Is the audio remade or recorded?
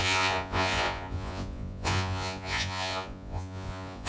remade